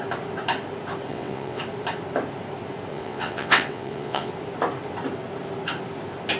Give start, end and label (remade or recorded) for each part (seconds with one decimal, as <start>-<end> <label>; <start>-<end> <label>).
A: 0.0-1.1 recorded; 1.1-1.6 remade; 1.6-2.9 recorded; 2.9-4.3 remade; 4.3-6.4 recorded